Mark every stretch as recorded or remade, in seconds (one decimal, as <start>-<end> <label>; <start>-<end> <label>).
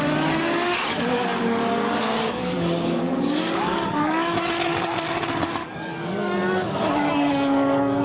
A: 0.0-8.0 remade